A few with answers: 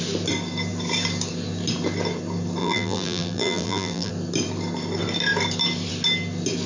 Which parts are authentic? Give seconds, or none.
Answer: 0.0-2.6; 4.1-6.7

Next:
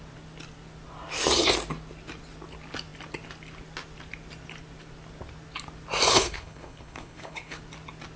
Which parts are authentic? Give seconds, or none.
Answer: 0.0-6.1; 7.6-8.2

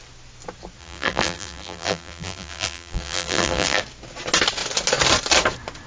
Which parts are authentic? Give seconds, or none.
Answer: 0.0-0.8; 3.8-5.9

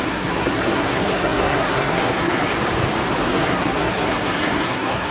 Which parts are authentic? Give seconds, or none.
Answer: 2.5-3.2

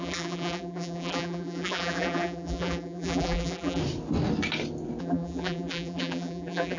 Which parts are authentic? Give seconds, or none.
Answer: 3.8-5.0

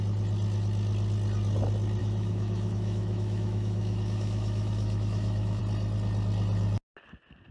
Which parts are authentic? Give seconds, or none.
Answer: 0.0-2.0; 5.6-7.5